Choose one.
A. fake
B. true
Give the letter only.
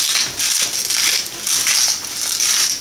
B